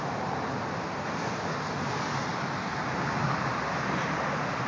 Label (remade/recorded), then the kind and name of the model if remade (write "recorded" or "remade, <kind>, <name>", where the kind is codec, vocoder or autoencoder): recorded